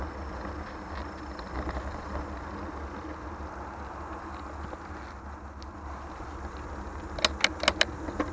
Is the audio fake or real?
real